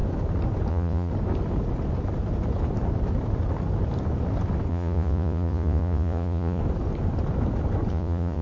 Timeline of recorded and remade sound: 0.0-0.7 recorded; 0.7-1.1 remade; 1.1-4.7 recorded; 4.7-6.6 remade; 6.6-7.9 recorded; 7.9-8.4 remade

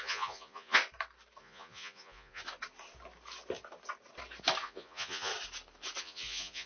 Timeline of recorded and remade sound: 0.0-0.8 remade; 0.8-1.4 recorded; 1.4-2.4 remade; 2.4-4.6 recorded; 4.6-5.3 remade; 5.3-6.0 recorded; 6.0-6.7 remade

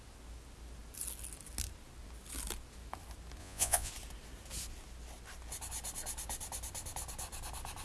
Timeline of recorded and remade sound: 0.0-3.4 recorded; 3.4-3.9 remade; 3.9-7.8 recorded

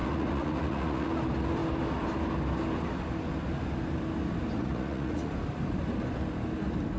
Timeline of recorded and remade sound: 0.0-1.1 remade; 1.1-4.6 recorded; 4.6-5.3 remade; 5.3-7.0 recorded

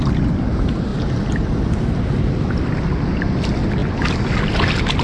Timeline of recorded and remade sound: 0.0-5.0 recorded